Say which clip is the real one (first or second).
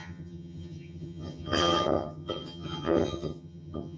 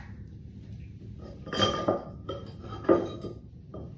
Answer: second